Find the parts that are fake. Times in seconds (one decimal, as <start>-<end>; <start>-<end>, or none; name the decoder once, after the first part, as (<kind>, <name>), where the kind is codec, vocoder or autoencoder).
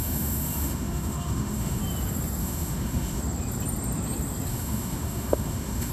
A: 0.0-1.8 (autoencoder, DAC-VAE); 2.4-3.2; 4.5-5.9